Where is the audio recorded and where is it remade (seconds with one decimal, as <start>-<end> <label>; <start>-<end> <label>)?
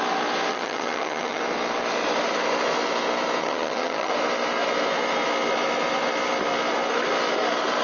0.0-0.5 recorded; 0.5-1.4 remade; 1.4-3.4 recorded; 3.4-4.1 remade; 4.1-7.8 recorded